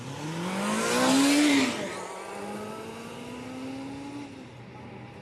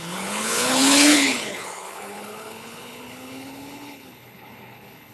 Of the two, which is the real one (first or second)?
first